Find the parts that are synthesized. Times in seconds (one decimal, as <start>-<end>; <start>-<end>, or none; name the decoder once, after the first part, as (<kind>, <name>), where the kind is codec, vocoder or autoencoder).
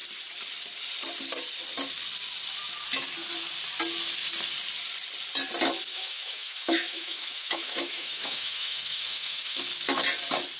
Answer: 5.9-9.6 (autoencoder, DAC-VAE)